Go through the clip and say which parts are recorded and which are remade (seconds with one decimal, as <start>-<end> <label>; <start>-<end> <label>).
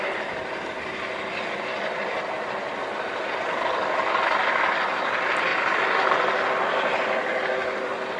0.0-8.2 recorded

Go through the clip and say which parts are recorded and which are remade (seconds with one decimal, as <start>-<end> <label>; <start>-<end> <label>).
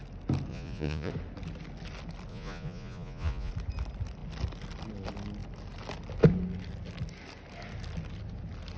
0.0-0.5 recorded; 0.5-1.1 remade; 1.1-2.3 recorded; 2.3-3.5 remade; 3.5-8.8 recorded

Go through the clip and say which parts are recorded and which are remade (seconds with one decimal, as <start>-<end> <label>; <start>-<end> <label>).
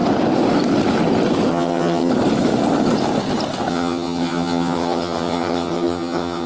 0.0-1.5 recorded; 1.5-2.1 remade; 2.1-3.7 recorded; 3.7-6.5 remade